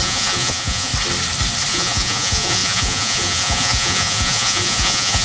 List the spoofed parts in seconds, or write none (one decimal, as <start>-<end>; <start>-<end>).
0.0-0.9; 1.7-5.2